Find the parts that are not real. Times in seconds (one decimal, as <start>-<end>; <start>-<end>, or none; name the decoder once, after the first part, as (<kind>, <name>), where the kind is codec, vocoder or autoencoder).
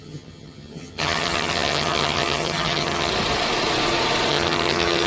0.0-3.1 (vocoder, HiFi-GAN); 4.3-5.1